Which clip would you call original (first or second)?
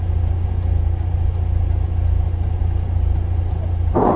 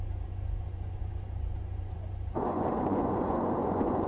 first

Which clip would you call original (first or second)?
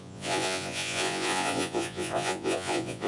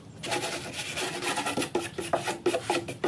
second